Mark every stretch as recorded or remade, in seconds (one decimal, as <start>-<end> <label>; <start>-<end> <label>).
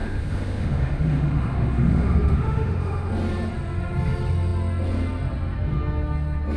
0.0-3.1 remade; 3.1-6.6 recorded